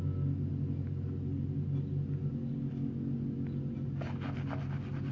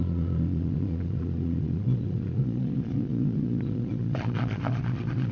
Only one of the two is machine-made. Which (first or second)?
second